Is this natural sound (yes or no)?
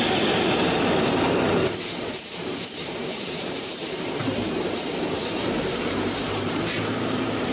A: no